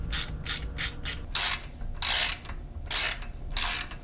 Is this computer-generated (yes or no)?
no